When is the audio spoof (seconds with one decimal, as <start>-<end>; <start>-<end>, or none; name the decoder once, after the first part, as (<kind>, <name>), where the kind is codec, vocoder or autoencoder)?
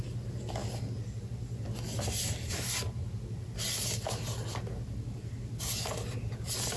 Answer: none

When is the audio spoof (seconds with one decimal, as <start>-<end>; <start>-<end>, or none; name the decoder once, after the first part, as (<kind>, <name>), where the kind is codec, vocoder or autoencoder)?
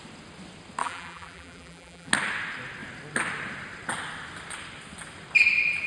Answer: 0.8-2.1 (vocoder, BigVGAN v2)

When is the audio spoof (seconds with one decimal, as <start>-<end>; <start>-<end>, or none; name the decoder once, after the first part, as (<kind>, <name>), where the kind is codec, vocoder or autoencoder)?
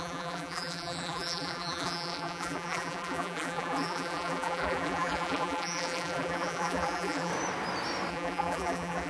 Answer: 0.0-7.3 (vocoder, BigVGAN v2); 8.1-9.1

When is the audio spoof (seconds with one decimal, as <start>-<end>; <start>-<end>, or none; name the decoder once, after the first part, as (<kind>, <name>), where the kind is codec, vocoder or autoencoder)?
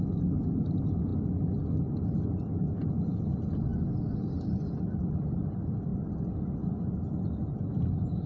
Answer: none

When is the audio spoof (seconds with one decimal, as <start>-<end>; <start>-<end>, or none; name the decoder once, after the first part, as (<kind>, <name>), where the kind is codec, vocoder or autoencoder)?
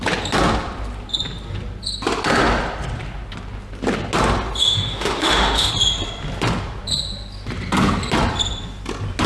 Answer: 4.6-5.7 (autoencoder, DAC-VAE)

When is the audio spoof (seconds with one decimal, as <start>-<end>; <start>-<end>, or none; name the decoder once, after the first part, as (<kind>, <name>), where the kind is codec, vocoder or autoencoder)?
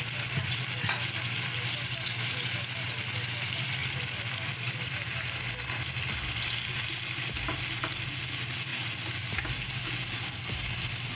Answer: 3.8-5.0 (vocoder, BigVGAN v2); 8.7-10.4